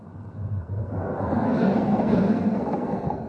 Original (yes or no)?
no